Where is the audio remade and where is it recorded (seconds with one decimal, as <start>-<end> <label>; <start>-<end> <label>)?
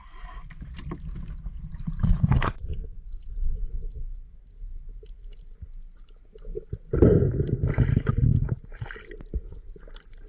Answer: 0.0-1.7 recorded; 1.7-3.7 remade; 3.7-10.3 recorded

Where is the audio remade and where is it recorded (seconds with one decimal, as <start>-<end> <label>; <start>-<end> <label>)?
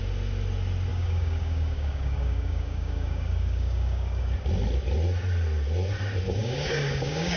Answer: 0.0-0.9 recorded; 0.9-4.2 remade; 4.2-6.4 recorded; 6.4-7.4 remade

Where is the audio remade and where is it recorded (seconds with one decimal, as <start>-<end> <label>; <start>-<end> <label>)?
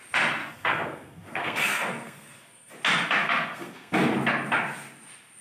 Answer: 0.0-0.4 recorded; 0.4-2.7 remade; 2.7-3.2 recorded; 3.2-4.1 remade; 4.1-5.4 recorded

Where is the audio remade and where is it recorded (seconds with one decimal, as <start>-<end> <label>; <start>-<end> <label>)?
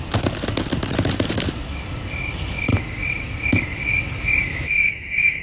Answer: 0.0-4.5 recorded; 4.5-5.4 remade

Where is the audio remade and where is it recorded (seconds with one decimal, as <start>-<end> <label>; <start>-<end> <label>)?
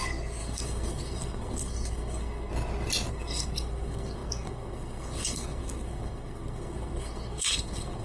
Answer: 0.0-2.5 remade; 2.5-3.1 recorded; 3.1-8.0 remade